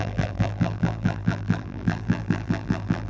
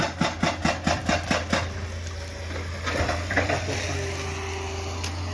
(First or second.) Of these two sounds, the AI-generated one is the first